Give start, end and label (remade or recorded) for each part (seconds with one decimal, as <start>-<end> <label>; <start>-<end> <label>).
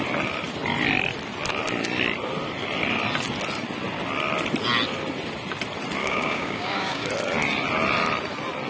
0.0-6.0 recorded; 6.0-7.1 remade; 7.1-8.7 recorded